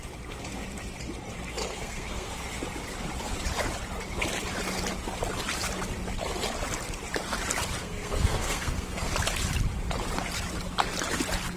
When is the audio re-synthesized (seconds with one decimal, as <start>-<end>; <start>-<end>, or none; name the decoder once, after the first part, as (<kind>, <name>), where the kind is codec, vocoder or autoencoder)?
1.6-2.3 (codec, SNAC); 7.8-9.1